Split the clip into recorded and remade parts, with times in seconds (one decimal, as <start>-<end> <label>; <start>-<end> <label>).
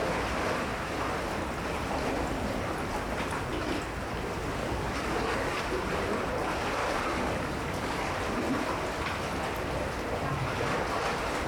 0.0-4.6 recorded; 4.6-5.6 remade; 5.6-6.8 recorded; 6.8-8.1 remade; 8.1-11.5 recorded